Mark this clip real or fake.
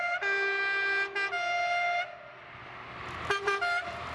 real